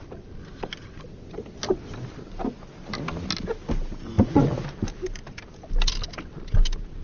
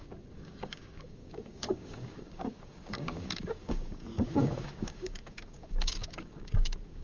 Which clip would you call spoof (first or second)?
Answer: second